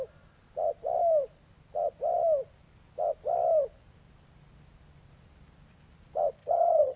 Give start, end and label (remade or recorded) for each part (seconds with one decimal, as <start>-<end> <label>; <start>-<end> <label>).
0.0-6.4 recorded; 6.4-7.0 remade